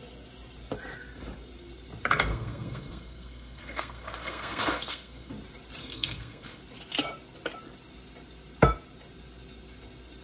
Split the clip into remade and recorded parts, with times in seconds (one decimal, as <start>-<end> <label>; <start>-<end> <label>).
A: 0.0-2.3 recorded; 2.3-5.3 remade; 5.3-5.8 recorded; 5.8-6.6 remade; 6.6-10.2 recorded

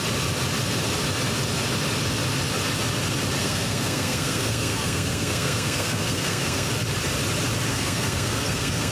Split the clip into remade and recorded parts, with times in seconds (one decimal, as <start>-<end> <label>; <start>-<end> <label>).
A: 0.0-3.4 recorded; 3.4-6.7 remade; 6.7-7.7 recorded; 7.7-8.9 remade

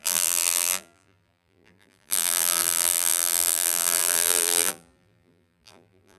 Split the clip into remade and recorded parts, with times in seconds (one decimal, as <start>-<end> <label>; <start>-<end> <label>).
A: 0.0-6.2 remade

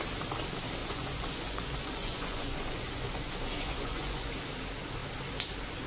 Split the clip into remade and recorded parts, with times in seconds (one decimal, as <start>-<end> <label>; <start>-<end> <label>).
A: 0.0-0.8 recorded; 0.8-4.3 remade; 4.3-5.9 recorded

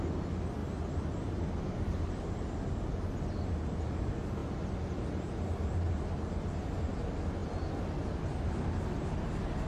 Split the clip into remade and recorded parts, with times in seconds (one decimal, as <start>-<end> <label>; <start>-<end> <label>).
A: 0.0-0.6 recorded; 0.6-2.1 remade; 2.1-9.7 recorded